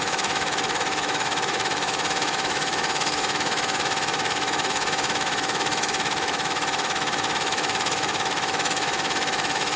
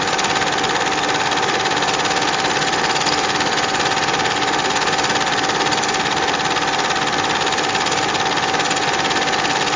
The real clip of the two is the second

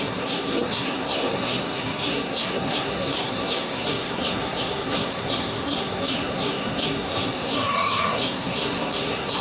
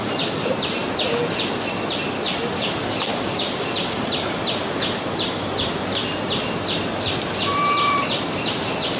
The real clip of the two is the second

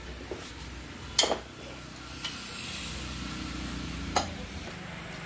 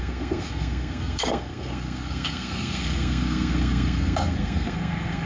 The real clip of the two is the first